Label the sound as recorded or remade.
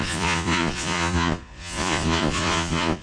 remade